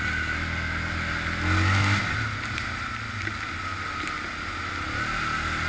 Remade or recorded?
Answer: recorded